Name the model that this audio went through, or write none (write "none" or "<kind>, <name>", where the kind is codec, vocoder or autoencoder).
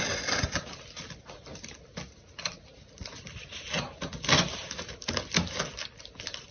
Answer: none